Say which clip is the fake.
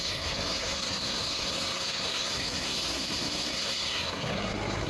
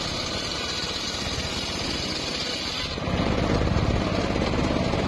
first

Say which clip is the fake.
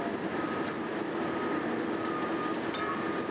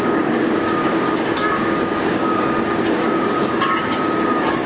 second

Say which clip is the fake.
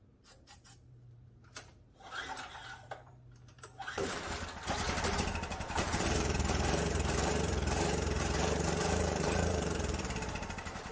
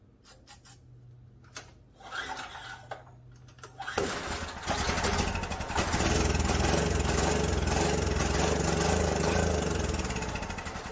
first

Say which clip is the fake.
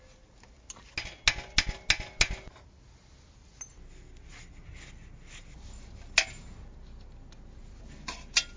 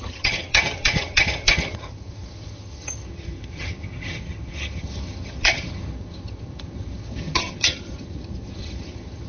second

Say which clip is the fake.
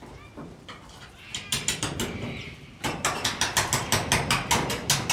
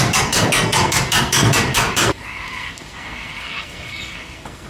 second